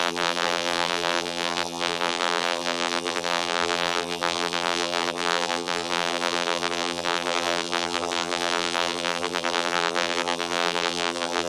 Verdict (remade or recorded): remade